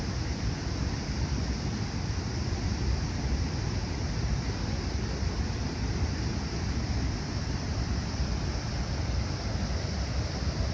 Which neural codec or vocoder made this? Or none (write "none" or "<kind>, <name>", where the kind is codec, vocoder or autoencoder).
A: none